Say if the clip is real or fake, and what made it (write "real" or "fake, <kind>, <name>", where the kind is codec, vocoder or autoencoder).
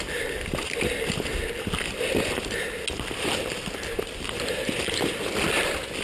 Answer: real